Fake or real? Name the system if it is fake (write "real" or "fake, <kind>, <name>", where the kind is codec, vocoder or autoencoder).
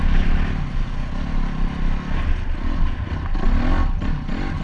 real